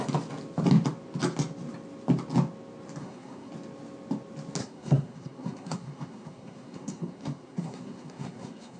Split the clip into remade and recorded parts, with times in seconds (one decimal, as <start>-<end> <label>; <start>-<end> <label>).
0.0-3.0 recorded; 3.0-3.5 remade; 3.5-4.6 recorded; 4.6-8.8 remade